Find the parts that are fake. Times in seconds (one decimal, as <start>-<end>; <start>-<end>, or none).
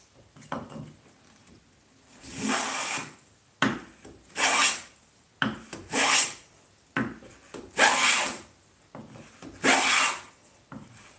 4.6-5.1